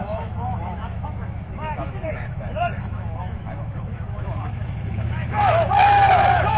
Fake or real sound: fake